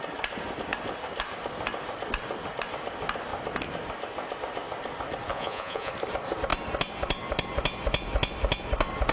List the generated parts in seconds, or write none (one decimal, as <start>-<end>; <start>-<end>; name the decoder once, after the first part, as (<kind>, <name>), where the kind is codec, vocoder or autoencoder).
5.3-5.9 (vocoder, Vocos)